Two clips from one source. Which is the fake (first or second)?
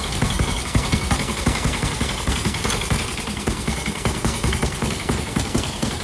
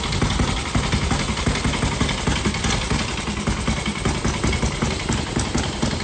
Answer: first